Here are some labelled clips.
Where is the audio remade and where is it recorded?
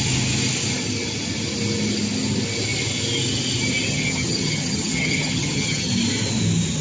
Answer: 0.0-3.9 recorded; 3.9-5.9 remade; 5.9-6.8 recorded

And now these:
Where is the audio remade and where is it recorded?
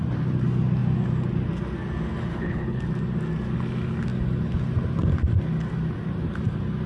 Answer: 0.0-2.3 recorded; 2.3-2.8 remade; 2.8-6.9 recorded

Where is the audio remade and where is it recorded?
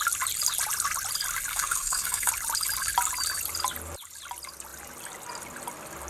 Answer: 0.0-1.5 recorded; 1.5-2.3 remade; 2.3-6.1 recorded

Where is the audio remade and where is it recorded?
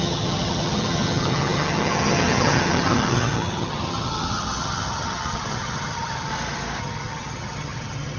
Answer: 0.0-6.3 remade; 6.3-6.8 recorded; 6.8-8.2 remade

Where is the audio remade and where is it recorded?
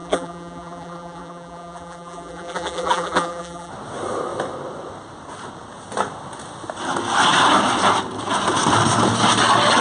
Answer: 0.0-3.7 remade; 3.7-9.8 recorded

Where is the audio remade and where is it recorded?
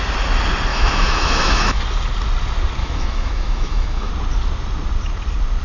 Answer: 0.0-0.7 recorded; 0.7-1.8 remade; 1.8-2.8 recorded; 2.8-4.1 remade; 4.1-5.6 recorded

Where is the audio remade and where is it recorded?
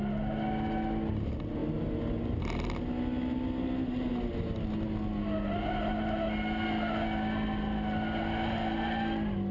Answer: 0.0-9.5 recorded